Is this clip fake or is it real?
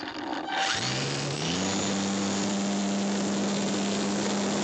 real